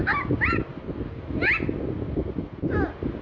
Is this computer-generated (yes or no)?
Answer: no